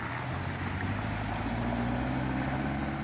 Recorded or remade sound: recorded